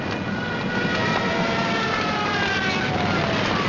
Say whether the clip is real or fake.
real